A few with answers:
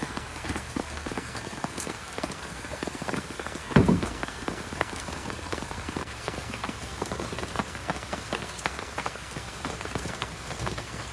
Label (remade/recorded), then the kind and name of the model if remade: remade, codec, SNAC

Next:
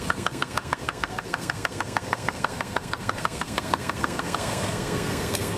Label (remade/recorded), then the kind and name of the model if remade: remade, codec, SNAC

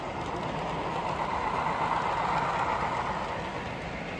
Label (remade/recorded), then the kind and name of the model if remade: recorded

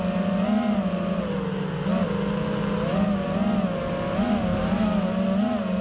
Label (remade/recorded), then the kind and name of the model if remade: recorded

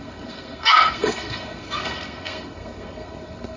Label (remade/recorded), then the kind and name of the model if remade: remade, codec, SNAC